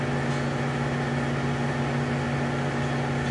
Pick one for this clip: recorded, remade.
recorded